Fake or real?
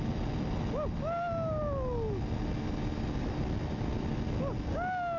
real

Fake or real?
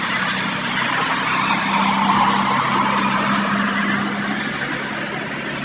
real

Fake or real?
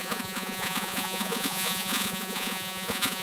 fake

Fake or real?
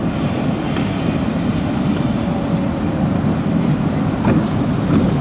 real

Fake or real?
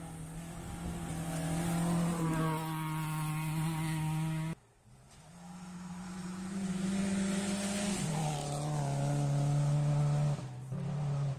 real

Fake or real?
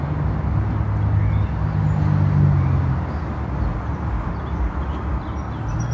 real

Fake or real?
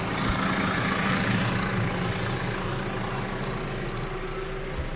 real